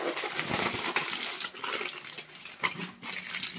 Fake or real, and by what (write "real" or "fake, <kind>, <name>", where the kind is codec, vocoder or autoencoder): real